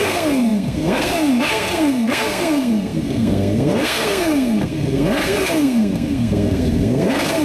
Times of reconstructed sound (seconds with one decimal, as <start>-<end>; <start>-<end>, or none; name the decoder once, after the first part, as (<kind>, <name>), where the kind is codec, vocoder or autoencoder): 0.0-7.4 (codec, SNAC)